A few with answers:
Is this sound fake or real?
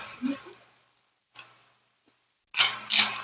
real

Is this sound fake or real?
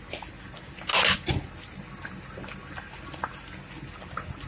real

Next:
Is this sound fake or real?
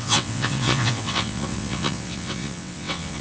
fake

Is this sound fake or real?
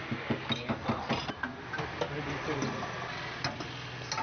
real